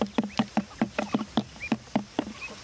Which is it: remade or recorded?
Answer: recorded